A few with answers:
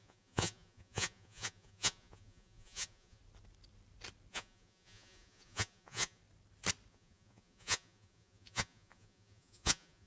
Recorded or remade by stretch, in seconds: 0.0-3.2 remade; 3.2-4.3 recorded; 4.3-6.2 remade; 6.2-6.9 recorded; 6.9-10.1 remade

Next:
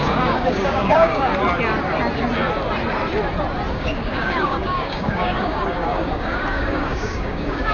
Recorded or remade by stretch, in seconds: 0.0-1.3 remade; 1.3-3.7 recorded; 3.7-7.7 remade

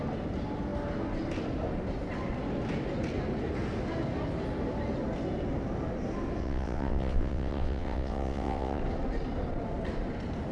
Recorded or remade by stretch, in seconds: 0.0-6.4 recorded; 6.4-8.8 remade; 8.8-10.5 recorded

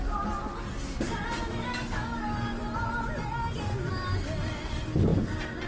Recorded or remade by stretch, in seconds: 0.0-5.7 recorded

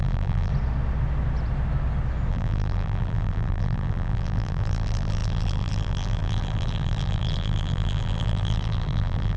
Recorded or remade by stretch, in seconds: 0.0-0.5 remade; 0.5-2.3 recorded; 2.3-9.4 remade

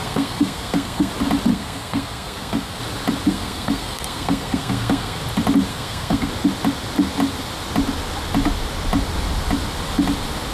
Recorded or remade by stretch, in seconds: 0.0-1.1 remade; 1.1-1.5 recorded; 1.5-2.8 remade; 2.8-3.3 recorded; 3.3-5.2 remade; 5.2-5.7 recorded; 5.7-6.3 remade; 6.3-10.5 recorded

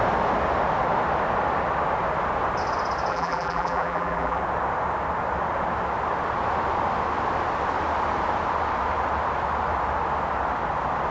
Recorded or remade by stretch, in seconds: 0.0-3.1 recorded; 3.1-4.4 remade; 4.4-11.1 recorded